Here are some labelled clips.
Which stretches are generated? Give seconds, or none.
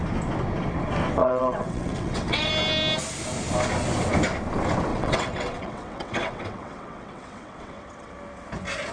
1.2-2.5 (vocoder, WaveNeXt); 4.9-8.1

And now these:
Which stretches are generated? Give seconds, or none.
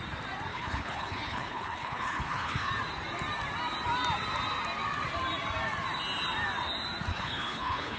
0.5-2.7 (codec, HILCodec); 7.1-8.0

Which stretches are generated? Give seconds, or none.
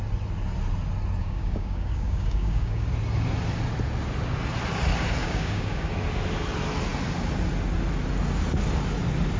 1.2-2.9 (codec, DAC); 5.2-5.9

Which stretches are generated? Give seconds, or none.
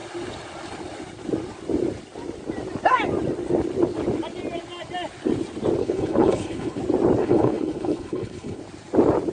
5.8-6.8 (codec, HILCodec); 7.2-8.6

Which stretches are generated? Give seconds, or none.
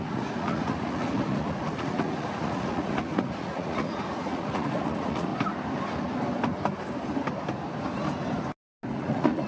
0.0-5.3 (vocoder, Vocos); 9.0-9.5